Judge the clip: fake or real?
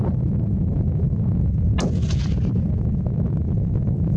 real